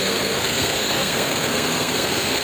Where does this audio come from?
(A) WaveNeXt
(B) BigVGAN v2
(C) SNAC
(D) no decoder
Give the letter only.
C